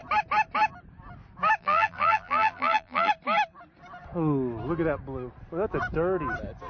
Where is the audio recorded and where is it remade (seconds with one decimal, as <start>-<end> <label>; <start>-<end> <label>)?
0.0-1.6 recorded; 1.6-3.1 remade; 3.1-6.7 recorded